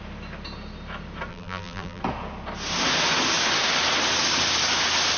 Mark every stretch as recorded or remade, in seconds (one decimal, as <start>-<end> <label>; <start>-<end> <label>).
0.0-1.3 recorded; 1.3-2.0 remade; 2.0-5.2 recorded